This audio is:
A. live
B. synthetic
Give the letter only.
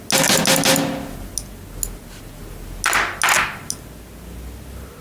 A